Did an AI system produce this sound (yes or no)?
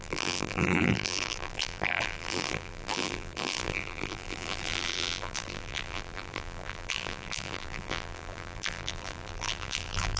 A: yes